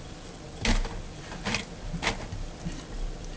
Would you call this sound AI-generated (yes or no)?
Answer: no